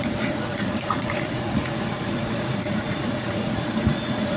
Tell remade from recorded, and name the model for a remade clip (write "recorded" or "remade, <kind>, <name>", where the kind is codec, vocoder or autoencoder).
remade, vocoder, Vocos